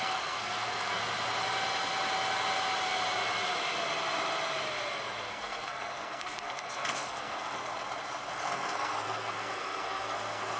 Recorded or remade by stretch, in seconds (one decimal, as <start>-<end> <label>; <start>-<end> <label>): 0.0-1.0 remade; 1.0-5.3 recorded; 5.3-7.7 remade; 7.7-8.3 recorded; 8.3-10.6 remade